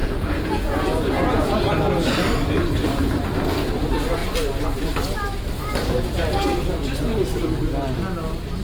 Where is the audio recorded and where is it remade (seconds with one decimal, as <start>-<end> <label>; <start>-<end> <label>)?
0.0-1.7 remade; 1.7-8.6 recorded